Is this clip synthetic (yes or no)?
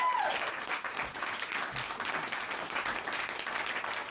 no